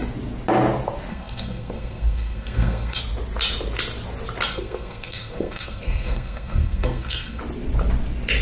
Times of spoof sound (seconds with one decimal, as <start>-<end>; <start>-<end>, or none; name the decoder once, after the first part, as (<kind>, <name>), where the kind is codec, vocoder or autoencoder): 1.1-3.0 (codec, SNAC); 4.5-7.4

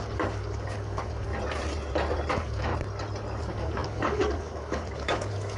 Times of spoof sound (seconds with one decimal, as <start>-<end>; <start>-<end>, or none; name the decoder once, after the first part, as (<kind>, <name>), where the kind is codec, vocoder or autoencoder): 0.0-1.3 (codec, DAC); 2.3-2.7; 3.4-5.6

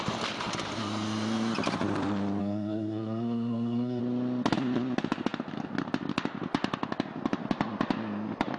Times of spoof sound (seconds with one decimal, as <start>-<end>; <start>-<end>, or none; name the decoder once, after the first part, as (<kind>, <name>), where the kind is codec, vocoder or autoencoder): 2.4-4.0 (codec, SNAC)

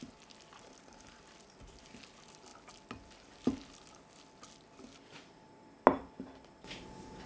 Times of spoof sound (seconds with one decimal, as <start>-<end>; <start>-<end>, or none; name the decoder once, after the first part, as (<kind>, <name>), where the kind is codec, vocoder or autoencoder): none